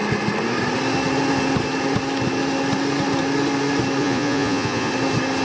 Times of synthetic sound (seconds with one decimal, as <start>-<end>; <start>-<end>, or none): 4.0-4.9